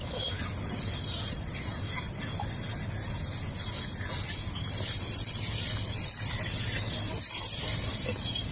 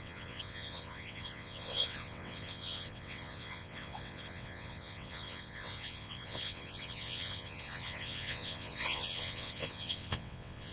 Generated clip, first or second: second